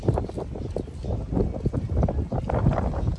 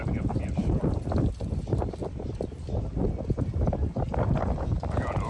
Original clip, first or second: first